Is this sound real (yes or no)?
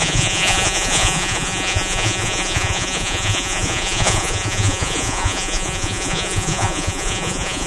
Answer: no